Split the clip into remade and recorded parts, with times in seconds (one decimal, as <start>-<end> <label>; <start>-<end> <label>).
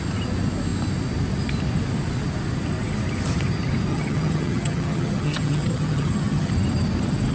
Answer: 0.0-3.9 recorded; 3.9-6.5 remade; 6.5-7.3 recorded